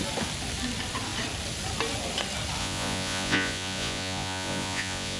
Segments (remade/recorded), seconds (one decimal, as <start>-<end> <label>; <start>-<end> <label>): 0.0-2.6 recorded; 2.6-5.2 remade